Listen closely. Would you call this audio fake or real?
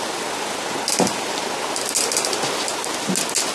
real